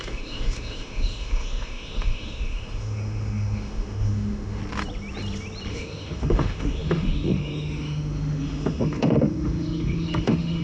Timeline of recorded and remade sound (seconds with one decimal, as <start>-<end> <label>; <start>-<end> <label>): 0.0-4.6 remade; 4.6-5.7 recorded; 5.7-10.6 remade

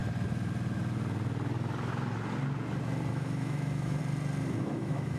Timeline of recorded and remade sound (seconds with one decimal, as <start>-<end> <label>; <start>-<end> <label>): 0.0-3.1 recorded; 3.1-4.0 remade; 4.0-4.6 recorded; 4.6-5.2 remade

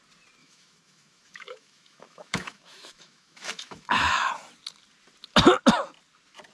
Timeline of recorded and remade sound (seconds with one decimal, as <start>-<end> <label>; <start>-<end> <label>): 0.0-0.4 recorded; 0.4-4.3 remade; 4.3-6.5 recorded

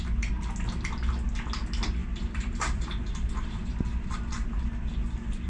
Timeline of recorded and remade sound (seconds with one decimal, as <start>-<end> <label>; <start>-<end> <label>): 0.0-2.0 recorded; 2.0-4.1 remade; 4.1-5.5 recorded

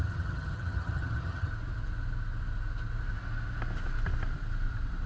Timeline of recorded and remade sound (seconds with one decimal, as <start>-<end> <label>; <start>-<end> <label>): 0.0-1.5 remade; 1.5-5.1 recorded